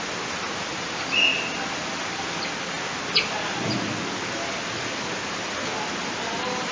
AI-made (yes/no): no